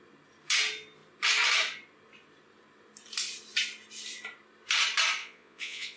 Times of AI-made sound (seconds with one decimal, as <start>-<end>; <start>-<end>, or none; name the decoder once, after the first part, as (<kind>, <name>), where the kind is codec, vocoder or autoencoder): 5.2-6.0 (vocoder, Vocos)